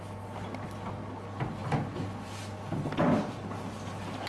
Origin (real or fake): real